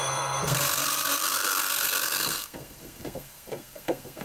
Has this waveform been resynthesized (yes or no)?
yes